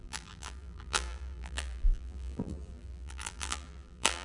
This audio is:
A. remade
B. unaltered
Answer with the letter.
A